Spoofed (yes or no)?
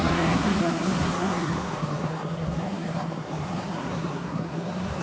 yes